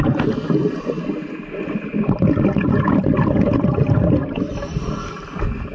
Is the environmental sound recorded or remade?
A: recorded